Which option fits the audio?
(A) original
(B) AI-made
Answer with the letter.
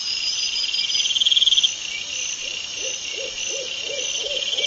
A